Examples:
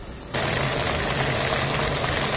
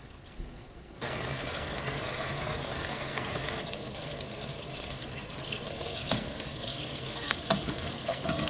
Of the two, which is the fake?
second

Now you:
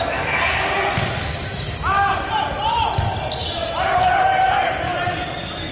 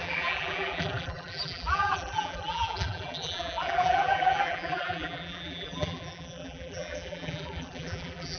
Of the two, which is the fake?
second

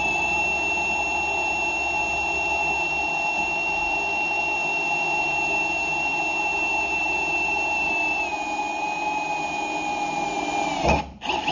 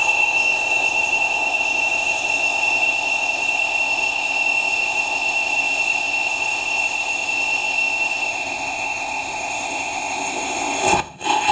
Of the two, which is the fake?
second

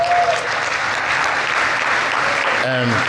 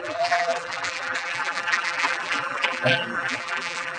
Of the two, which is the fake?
second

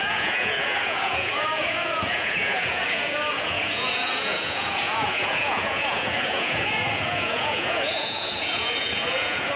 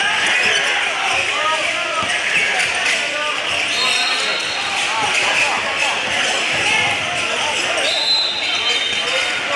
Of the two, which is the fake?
first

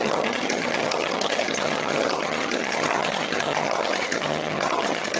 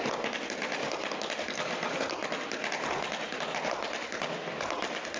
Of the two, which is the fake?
first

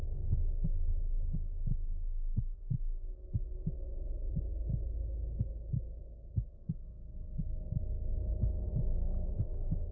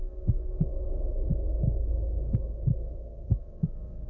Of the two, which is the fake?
second